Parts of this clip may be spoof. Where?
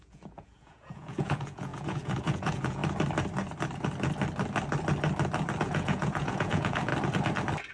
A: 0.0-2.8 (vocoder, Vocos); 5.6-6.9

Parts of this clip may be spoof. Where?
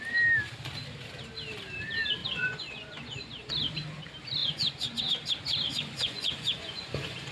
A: 2.2-3.5 (vocoder, Vocos); 4.4-5.0; 5.7-7.3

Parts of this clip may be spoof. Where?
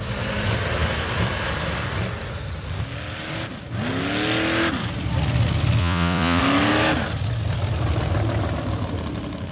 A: 5.8-6.4 (vocoder, Vocos)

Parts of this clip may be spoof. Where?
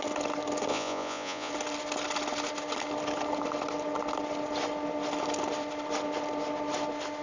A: 0.7-1.5 (vocoder, Vocos)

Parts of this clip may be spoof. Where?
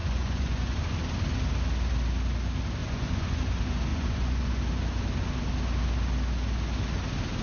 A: 0.0-0.8 (vocoder, Vocos); 2.8-3.4; 3.9-4.6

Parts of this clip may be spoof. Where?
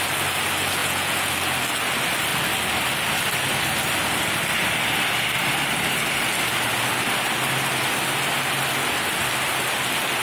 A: 0.8-1.3 (vocoder, Vocos)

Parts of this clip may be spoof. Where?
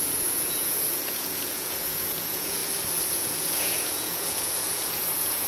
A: 0.0-2.6 (vocoder, Vocos); 3.1-5.5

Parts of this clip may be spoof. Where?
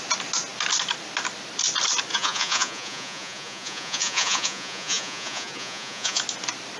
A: 2.1-6.2 (vocoder, Vocos)